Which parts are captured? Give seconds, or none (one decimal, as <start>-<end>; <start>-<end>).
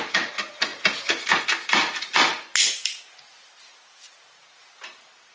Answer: 2.3-4.4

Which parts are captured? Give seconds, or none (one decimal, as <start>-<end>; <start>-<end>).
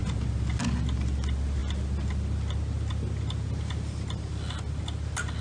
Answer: 0.0-5.4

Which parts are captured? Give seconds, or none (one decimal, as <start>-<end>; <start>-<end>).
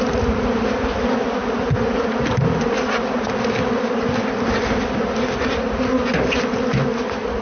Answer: 0.0-7.4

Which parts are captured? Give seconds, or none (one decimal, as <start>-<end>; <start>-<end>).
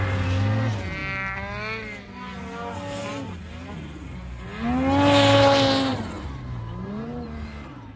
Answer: 0.0-5.9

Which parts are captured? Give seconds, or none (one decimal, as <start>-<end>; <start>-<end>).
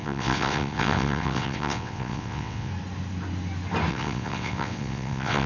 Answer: 2.7-3.9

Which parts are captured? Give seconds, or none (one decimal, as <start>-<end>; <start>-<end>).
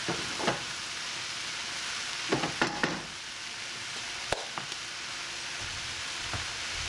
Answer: 0.5-2.8; 3.9-6.9